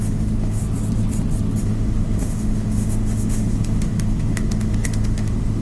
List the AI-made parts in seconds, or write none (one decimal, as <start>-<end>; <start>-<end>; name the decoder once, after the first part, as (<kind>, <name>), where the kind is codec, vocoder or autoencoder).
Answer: 0.0-0.6 (autoencoder, DAC-VAE); 1.6-5.6